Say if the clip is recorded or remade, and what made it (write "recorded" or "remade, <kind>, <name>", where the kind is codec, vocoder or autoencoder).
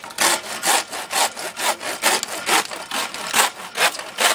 recorded